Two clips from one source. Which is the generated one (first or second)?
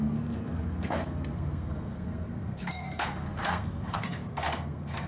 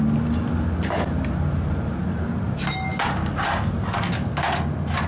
first